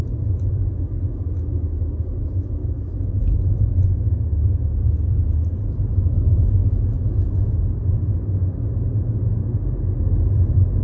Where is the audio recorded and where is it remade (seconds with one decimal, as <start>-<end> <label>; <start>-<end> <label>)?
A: 0.0-10.8 recorded